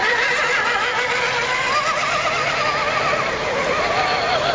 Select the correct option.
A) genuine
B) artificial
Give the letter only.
A